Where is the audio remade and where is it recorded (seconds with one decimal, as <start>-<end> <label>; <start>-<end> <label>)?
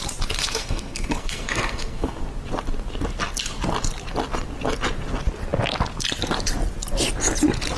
0.0-0.4 recorded; 0.4-2.2 remade; 2.2-7.8 recorded